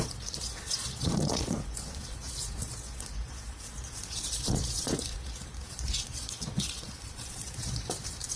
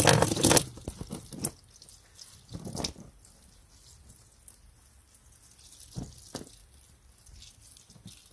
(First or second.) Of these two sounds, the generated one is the first